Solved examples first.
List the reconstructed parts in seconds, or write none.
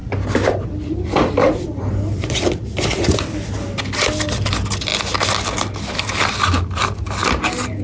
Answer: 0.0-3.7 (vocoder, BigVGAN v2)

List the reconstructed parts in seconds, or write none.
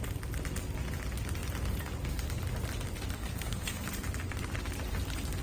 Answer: 3.2-3.9 (codec, SNAC)